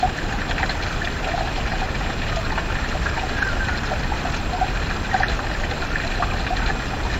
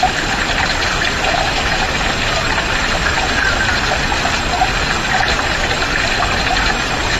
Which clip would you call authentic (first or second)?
first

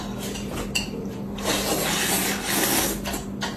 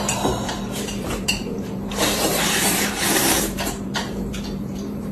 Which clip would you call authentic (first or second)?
first